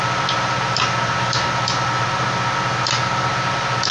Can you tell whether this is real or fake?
real